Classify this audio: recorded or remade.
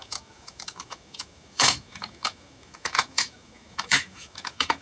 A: remade